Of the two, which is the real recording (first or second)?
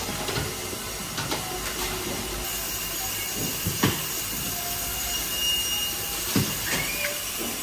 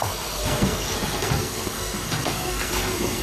first